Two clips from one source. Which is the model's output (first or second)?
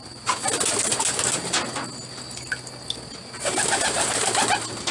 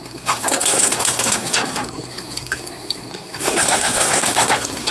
second